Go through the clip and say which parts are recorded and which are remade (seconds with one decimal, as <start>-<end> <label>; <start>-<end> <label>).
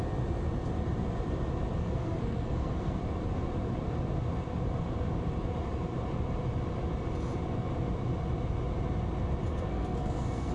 0.0-1.8 recorded; 1.8-3.0 remade; 3.0-9.5 recorded; 9.5-10.5 remade